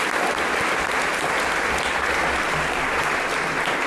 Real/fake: real